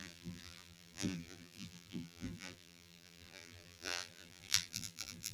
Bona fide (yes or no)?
no